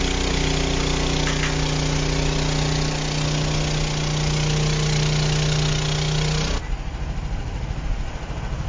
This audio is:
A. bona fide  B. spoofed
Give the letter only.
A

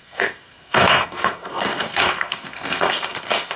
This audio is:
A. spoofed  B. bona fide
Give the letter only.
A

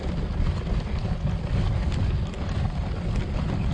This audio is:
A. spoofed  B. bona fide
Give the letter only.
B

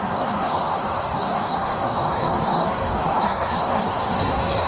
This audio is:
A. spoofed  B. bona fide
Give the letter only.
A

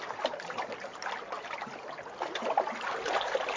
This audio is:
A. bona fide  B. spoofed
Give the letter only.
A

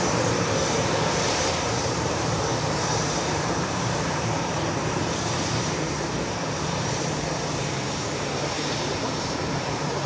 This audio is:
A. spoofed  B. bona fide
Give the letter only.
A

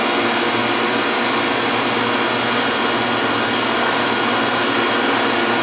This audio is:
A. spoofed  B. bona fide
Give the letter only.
B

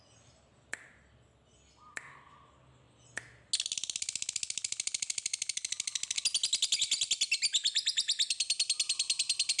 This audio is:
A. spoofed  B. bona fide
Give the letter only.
B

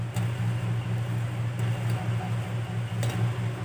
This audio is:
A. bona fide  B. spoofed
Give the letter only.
A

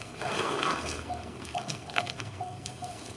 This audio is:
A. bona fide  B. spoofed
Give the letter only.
B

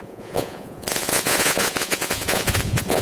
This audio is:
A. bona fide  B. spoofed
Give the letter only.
B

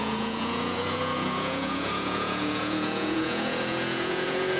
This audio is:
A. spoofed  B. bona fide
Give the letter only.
A